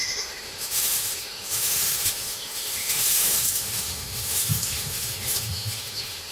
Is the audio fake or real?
fake